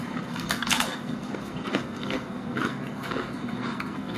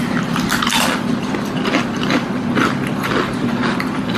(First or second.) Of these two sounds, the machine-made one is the first